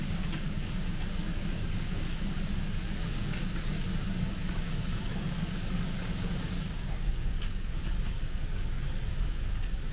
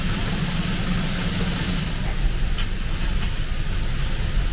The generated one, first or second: first